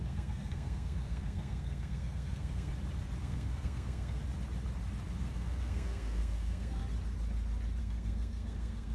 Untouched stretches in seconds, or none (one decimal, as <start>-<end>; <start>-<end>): 2.7-3.2; 4.2-5.2; 6.8-7.8